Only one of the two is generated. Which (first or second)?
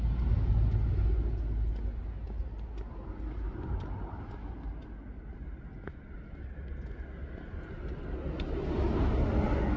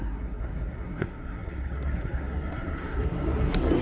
second